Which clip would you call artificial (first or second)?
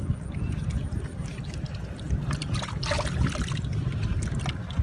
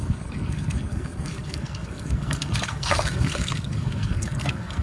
second